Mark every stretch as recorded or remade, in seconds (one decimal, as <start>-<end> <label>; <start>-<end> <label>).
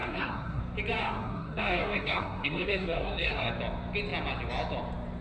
0.0-0.6 remade; 0.6-1.0 recorded; 1.0-3.5 remade; 3.5-5.2 recorded